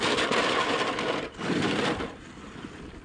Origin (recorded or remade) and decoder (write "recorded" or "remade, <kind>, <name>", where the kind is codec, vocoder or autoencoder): remade, vocoder, BigVGAN v2